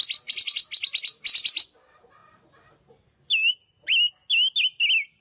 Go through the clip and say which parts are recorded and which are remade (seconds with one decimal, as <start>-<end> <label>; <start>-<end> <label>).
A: 0.0-5.2 recorded

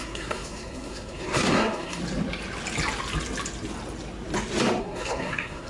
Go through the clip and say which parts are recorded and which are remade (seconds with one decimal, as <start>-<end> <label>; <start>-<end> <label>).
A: 0.0-2.0 remade; 2.0-4.8 recorded; 4.8-5.7 remade

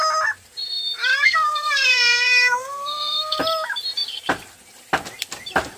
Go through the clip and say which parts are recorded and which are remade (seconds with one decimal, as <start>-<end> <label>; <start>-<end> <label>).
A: 0.0-1.1 recorded; 1.1-3.4 remade; 3.4-5.8 recorded

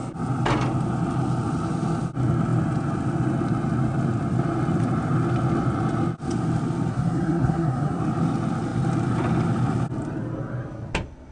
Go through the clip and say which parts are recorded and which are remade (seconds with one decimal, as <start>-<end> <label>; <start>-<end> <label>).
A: 0.0-6.9 recorded; 6.9-8.0 remade; 8.0-11.3 recorded